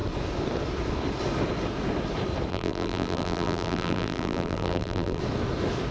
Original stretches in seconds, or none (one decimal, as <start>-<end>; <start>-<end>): 0.0-2.5; 5.2-5.9